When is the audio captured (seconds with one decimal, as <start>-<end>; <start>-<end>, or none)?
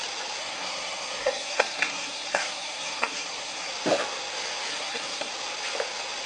0.0-0.4; 3.7-4.7; 5.3-6.3